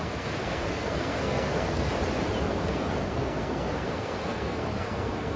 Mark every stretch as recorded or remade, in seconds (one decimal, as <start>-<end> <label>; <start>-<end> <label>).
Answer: 0.0-1.9 remade; 1.9-2.4 recorded; 2.4-5.4 remade